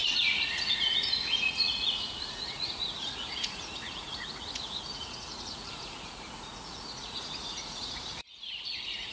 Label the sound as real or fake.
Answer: fake